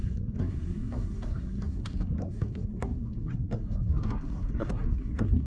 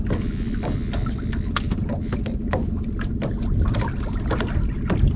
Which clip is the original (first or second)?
second